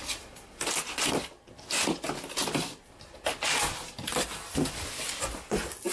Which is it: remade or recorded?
recorded